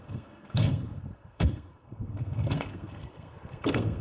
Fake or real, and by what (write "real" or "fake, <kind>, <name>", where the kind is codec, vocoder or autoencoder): fake, codec, SNAC